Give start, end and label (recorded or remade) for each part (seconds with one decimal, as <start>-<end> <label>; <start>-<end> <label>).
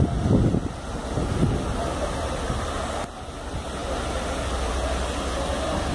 0.0-5.9 recorded